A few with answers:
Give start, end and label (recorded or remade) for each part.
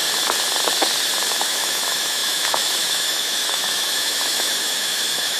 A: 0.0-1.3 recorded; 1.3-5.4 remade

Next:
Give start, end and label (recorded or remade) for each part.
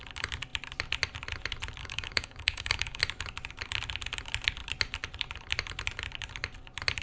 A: 0.0-1.8 recorded; 1.8-3.0 remade; 3.0-7.0 recorded